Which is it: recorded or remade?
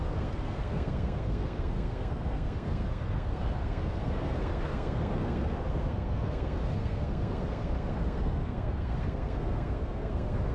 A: remade